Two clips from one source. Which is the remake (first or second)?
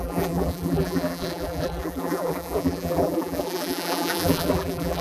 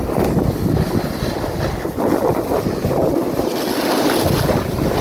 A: first